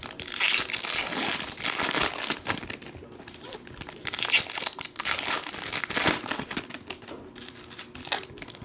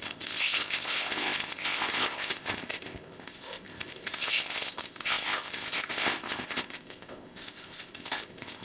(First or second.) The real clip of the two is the first